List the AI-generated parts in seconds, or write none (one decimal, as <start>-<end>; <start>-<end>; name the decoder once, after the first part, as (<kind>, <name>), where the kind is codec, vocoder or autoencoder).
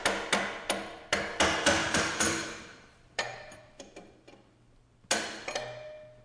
1.8-4.8 (vocoder, BigVGAN v2)